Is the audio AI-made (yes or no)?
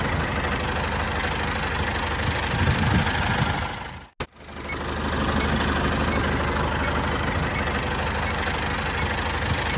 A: no